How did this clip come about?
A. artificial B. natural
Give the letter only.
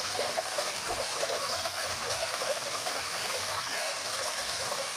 A